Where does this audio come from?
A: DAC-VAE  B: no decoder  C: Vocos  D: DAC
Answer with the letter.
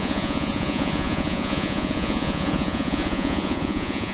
C